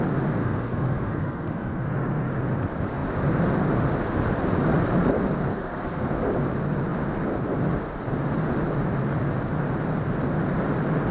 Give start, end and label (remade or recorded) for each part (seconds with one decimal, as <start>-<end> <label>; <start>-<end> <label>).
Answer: 0.0-0.4 recorded; 0.4-2.3 remade; 2.3-5.5 recorded; 5.5-6.1 remade; 6.1-11.1 recorded